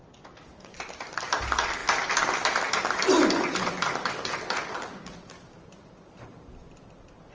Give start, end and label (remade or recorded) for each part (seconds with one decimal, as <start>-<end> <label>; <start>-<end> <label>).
0.0-7.3 recorded